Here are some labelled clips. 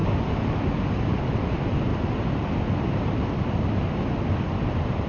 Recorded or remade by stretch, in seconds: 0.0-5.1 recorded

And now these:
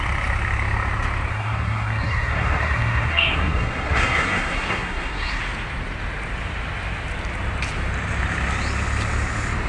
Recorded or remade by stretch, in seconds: 0.0-1.3 recorded; 1.3-5.4 remade; 5.4-9.7 recorded

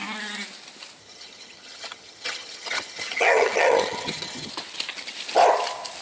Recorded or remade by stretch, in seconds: 0.0-1.0 recorded; 1.0-4.5 remade; 4.5-6.0 recorded

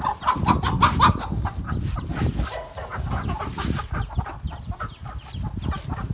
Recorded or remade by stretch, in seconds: 0.0-6.1 recorded